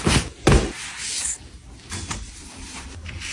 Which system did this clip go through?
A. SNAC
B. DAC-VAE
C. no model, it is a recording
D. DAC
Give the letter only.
C